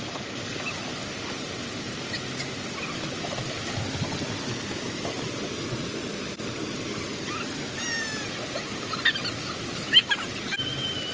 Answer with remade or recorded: recorded